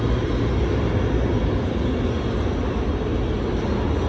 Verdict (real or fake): real